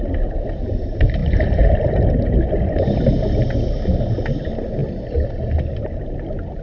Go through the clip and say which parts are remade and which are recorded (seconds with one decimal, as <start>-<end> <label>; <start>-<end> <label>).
0.0-6.6 recorded